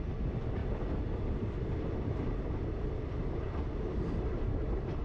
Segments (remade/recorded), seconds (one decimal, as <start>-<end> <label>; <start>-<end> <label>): 0.0-5.0 remade